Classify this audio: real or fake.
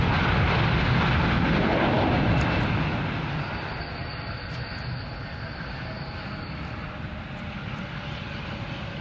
real